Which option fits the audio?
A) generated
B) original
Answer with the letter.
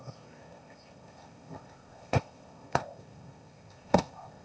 A